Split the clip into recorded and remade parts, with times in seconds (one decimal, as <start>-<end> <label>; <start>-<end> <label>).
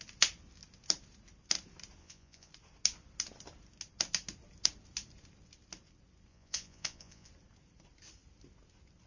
0.0-2.0 recorded; 2.0-2.5 remade; 2.5-6.3 recorded; 6.3-7.3 remade; 7.3-9.1 recorded